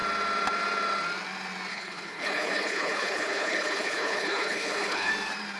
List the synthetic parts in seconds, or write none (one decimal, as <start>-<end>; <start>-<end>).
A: 1.7-5.1